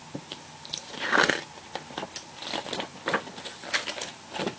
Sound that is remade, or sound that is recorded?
recorded